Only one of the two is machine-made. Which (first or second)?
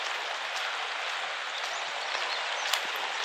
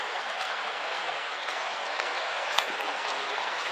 second